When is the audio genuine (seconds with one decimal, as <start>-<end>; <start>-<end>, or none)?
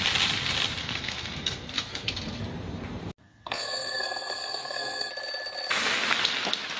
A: 0.0-0.8; 2.4-3.2; 5.1-6.8